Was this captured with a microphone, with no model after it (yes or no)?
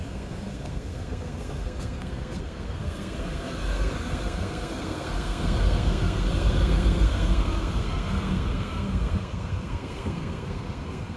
no